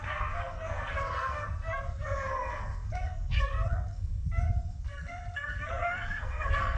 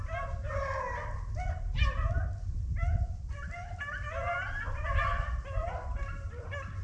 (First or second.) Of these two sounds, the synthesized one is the first